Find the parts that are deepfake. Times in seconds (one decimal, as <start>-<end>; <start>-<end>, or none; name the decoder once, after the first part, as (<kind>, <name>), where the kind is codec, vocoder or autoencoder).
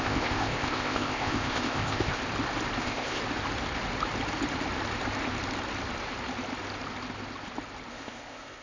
0.0-2.2 (codec, ZipCodec); 2.8-3.2; 7.9-8.6